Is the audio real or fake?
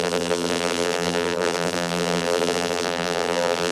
fake